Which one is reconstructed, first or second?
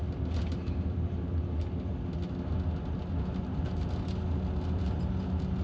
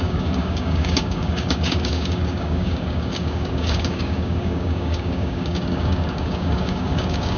second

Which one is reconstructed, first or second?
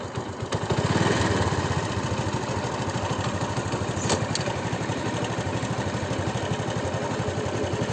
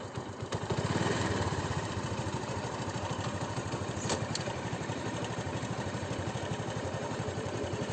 second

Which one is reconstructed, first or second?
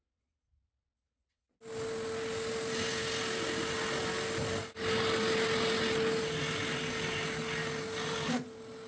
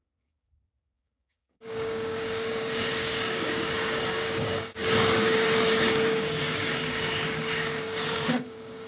second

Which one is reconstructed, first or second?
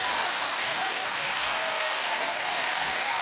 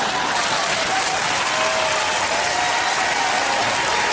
first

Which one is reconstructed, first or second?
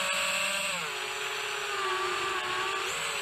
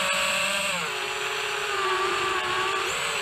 second